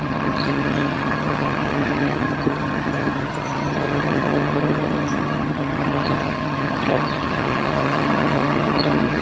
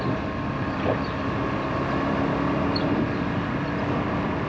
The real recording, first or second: second